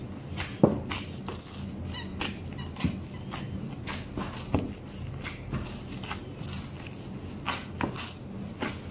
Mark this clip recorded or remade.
recorded